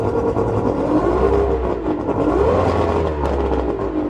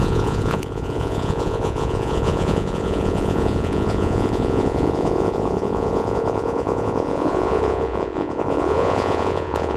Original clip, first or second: first